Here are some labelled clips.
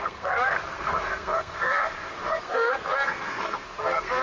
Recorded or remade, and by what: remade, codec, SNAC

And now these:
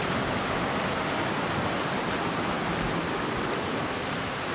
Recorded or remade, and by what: recorded